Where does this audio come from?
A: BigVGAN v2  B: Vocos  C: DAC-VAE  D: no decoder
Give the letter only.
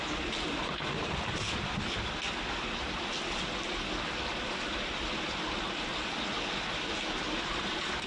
D